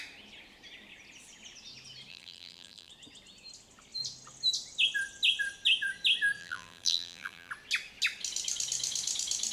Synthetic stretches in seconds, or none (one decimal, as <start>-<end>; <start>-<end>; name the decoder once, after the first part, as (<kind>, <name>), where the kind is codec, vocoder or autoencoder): 2.1-2.9 (vocoder, BigVGAN v2); 6.4-7.5